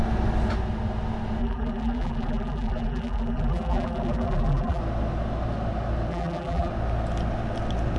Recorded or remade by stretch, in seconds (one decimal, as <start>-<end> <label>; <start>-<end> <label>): 0.0-1.4 recorded; 1.4-4.8 remade; 4.8-6.1 recorded; 6.1-6.7 remade; 6.7-8.0 recorded